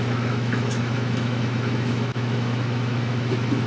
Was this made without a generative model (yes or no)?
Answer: no